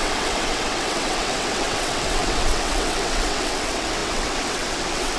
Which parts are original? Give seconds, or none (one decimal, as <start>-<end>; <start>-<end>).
none